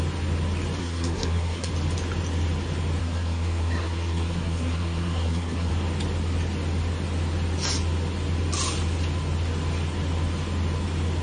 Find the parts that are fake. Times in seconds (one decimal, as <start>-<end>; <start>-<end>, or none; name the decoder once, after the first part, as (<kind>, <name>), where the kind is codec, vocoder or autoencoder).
0.8-1.7 (codec, SNAC); 3.0-5.7